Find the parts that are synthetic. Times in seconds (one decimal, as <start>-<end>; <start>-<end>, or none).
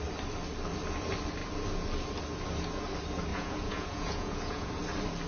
3.3-4.7